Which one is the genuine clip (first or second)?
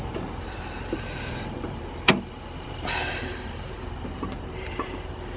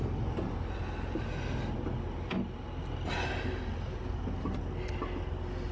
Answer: second